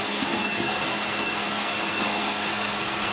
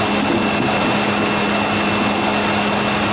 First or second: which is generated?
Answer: first